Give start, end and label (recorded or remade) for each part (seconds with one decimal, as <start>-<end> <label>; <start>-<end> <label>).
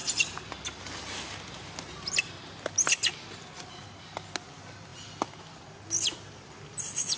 0.0-7.2 recorded